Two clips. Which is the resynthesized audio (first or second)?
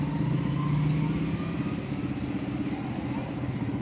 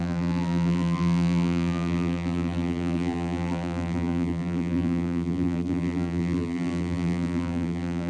second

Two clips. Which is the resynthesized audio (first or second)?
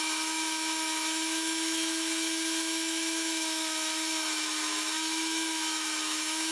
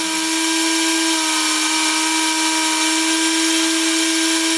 first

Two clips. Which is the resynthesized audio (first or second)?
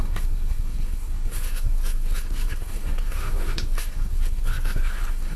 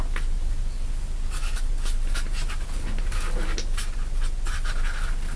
first